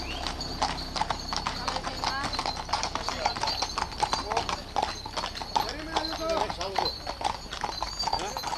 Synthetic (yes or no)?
no